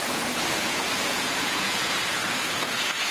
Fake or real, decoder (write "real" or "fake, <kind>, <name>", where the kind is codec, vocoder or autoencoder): fake, vocoder, Vocos